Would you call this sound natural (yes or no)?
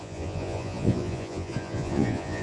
no